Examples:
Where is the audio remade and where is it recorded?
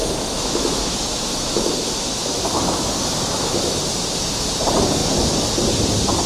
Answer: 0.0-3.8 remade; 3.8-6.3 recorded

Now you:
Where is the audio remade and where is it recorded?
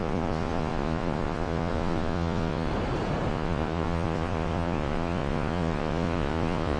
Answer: 0.0-2.7 remade; 2.7-3.3 recorded; 3.3-6.8 remade